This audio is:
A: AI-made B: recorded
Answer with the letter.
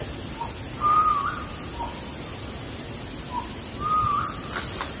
B